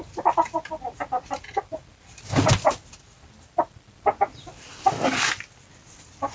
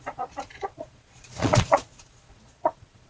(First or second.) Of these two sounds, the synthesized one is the second